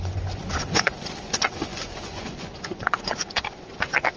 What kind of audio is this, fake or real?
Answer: fake